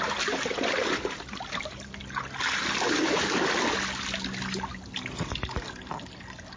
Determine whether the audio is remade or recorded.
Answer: recorded